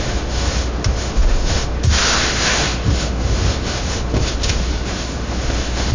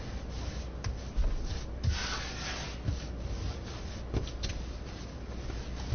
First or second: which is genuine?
second